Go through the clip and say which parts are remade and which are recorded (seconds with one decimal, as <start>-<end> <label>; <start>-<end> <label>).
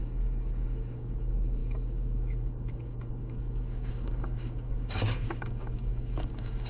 0.0-6.7 remade